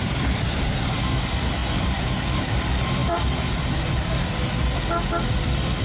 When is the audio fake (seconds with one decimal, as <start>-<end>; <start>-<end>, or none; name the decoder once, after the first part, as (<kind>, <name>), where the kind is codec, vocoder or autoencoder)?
0.0-1.0 (vocoder, BigVGAN v2); 1.6-2.2; 3.0-4.3